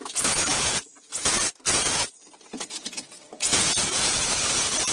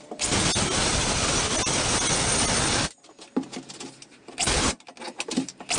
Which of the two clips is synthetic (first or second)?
first